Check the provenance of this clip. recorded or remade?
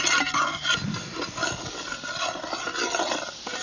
recorded